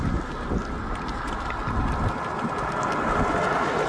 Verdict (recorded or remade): recorded